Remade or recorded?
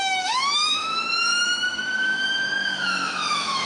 remade